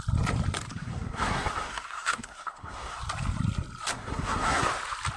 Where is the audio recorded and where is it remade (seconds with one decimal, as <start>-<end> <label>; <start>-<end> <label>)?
0.0-0.7 recorded; 0.7-3.0 remade; 3.0-3.9 recorded; 3.9-4.7 remade; 4.7-5.2 recorded